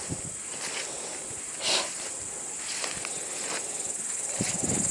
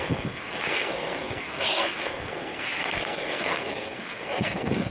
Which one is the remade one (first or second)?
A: second